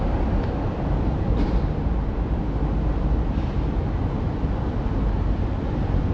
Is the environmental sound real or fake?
real